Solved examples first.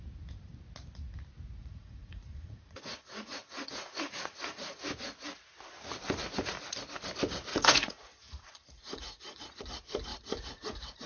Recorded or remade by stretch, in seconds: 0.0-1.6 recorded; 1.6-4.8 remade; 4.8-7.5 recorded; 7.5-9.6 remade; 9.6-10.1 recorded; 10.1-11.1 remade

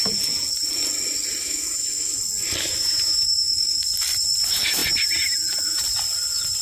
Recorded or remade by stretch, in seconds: 0.0-1.4 recorded; 1.4-2.2 remade; 2.2-3.1 recorded; 3.1-3.8 remade; 3.8-6.6 recorded

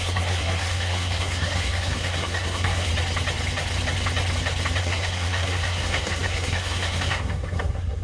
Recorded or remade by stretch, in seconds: 0.0-2.9 remade; 2.9-4.8 recorded; 4.8-8.0 remade

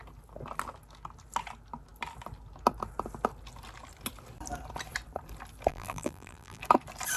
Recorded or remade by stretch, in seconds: 0.0-5.7 recorded; 5.7-6.6 remade; 6.6-7.2 recorded

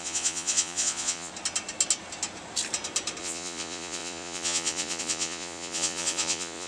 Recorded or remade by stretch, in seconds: 0.0-1.3 remade; 1.3-3.2 recorded; 3.2-6.7 remade

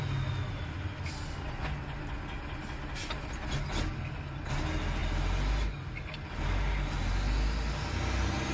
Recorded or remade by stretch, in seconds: 0.0-8.5 recorded

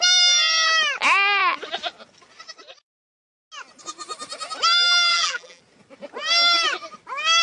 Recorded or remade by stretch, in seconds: 0.0-5.1 recorded; 5.1-5.6 remade; 5.6-7.4 recorded